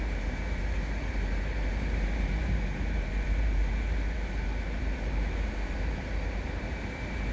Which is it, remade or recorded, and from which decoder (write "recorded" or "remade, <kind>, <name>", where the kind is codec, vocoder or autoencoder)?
remade, vocoder, BigVGAN v2